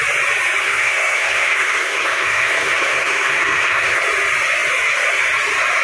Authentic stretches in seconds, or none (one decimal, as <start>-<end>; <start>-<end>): 0.0-0.6; 4.0-5.8